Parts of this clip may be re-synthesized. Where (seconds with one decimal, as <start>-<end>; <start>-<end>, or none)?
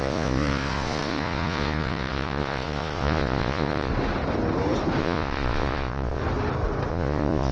0.0-3.9; 5.0-6.2; 6.9-7.5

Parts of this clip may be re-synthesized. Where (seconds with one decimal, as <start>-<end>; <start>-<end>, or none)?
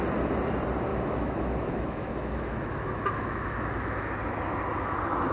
0.9-4.1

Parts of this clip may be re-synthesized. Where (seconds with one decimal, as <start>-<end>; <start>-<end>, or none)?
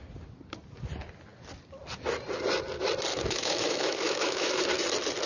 3.1-4.6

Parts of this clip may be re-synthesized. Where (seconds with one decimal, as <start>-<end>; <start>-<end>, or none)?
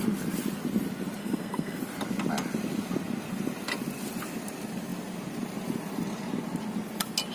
1.2-1.8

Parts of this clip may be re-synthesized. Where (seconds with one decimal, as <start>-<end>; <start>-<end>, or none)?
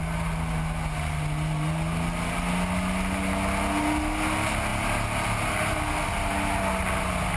none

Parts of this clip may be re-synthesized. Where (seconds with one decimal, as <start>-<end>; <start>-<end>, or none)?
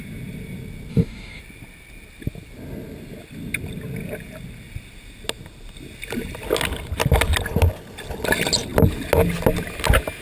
0.9-1.4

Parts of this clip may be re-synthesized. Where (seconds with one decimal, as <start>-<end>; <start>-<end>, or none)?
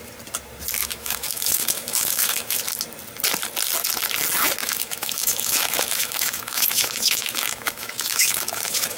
0.8-2.6; 4.6-9.0